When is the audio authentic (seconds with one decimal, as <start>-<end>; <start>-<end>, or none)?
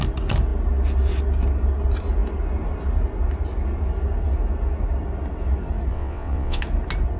0.0-5.9; 6.6-7.2